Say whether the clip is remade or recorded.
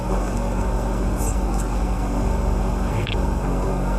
remade